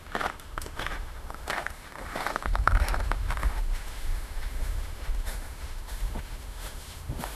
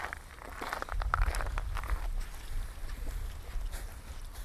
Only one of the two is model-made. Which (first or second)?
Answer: first